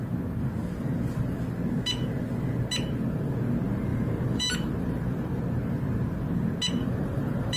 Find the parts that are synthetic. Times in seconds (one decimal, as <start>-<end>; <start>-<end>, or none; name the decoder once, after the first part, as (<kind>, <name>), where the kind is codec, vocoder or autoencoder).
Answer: 0.6-1.4 (vocoder, BigVGAN v2); 3.9-5.4; 6.8-7.6